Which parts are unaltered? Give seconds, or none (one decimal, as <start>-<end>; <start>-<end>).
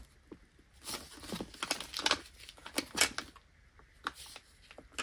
0.0-5.0